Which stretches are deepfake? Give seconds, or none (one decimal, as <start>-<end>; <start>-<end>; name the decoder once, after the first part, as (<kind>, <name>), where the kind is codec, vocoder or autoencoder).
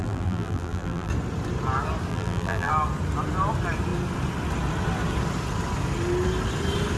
0.0-1.1 (vocoder, BigVGAN v2); 2.1-2.7